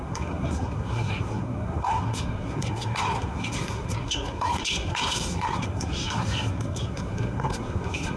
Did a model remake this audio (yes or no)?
yes